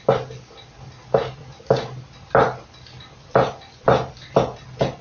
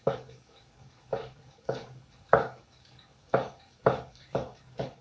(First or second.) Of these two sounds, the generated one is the second